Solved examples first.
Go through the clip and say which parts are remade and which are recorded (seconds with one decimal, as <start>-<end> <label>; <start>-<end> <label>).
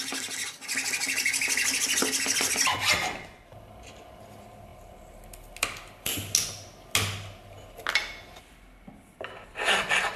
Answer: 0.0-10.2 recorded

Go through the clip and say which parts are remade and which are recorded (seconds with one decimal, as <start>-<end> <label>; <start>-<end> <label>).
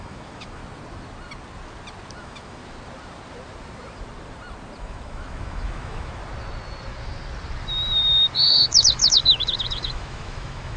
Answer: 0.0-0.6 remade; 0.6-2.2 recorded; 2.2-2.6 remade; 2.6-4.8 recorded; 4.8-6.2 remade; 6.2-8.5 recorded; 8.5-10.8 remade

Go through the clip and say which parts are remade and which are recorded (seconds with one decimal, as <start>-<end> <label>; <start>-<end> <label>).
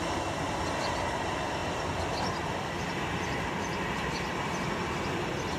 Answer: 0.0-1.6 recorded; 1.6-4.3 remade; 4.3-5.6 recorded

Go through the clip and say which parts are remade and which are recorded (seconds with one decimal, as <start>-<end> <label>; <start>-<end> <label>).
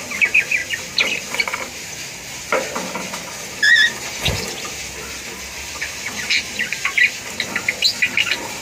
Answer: 0.0-8.6 recorded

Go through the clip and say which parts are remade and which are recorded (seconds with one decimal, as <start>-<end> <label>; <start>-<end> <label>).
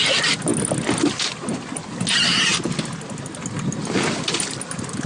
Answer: 0.0-5.1 recorded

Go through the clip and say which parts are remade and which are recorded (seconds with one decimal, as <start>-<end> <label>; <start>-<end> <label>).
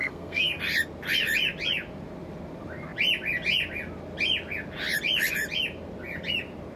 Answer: 0.0-0.6 remade; 0.6-6.8 recorded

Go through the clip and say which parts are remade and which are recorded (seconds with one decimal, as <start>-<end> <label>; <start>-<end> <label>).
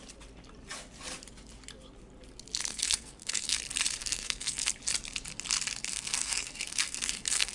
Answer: 0.0-2.7 recorded; 2.7-3.6 remade; 3.6-4.0 recorded; 4.0-4.7 remade; 4.7-5.8 recorded; 5.8-7.5 remade